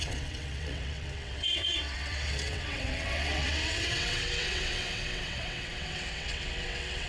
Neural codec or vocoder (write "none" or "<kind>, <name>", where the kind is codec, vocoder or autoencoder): vocoder, WaveNeXt